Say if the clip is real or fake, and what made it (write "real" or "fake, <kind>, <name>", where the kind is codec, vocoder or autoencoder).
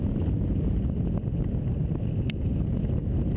real